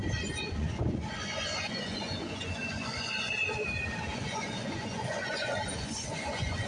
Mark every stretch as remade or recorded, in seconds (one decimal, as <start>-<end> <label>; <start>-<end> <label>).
0.0-3.3 remade; 3.3-4.1 recorded; 4.1-6.7 remade